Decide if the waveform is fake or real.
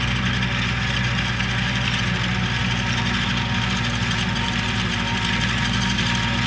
real